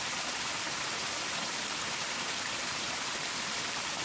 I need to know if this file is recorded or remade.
remade